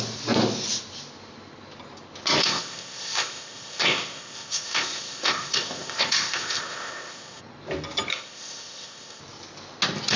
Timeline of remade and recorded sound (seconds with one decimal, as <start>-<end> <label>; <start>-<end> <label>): 0.0-2.4 recorded; 2.4-7.4 remade; 7.4-8.1 recorded; 8.1-9.2 remade; 9.2-10.2 recorded